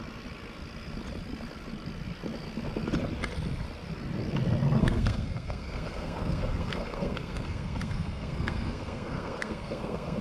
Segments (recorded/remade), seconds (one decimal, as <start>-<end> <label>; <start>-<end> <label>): 0.0-4.8 recorded; 4.8-10.2 remade